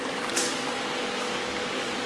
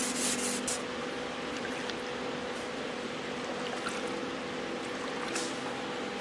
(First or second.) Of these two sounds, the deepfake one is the first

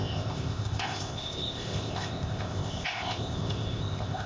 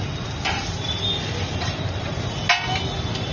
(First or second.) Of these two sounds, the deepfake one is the first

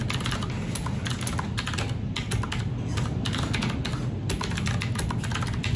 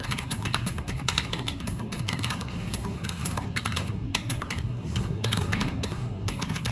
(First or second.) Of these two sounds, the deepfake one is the second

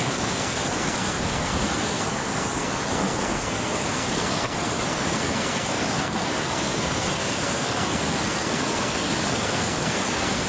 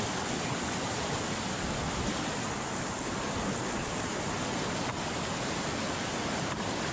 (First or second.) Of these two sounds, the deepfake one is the first